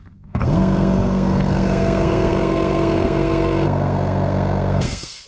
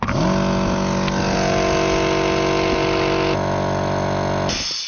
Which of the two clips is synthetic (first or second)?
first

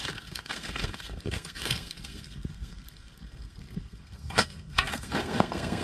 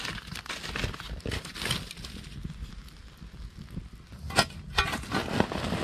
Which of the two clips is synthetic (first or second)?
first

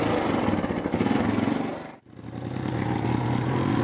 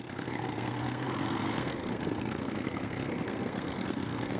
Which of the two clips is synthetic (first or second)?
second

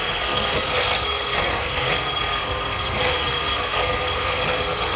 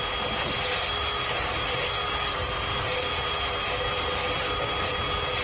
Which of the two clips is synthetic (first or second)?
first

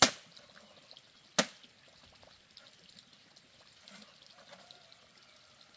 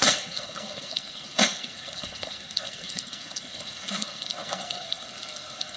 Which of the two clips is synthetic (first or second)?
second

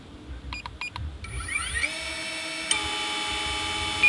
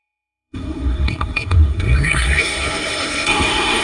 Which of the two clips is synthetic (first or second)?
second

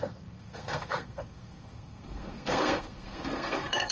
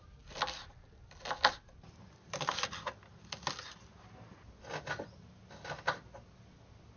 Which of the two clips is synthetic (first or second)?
first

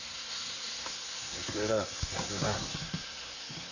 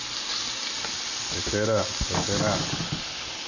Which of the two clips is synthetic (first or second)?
first